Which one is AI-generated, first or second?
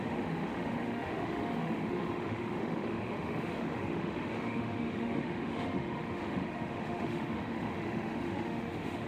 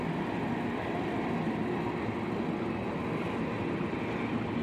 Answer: first